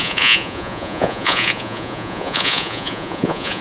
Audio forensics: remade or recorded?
remade